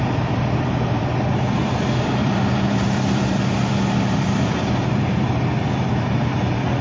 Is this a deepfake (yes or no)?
yes